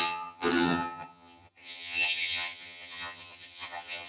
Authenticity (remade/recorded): remade